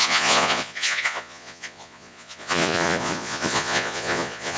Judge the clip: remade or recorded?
remade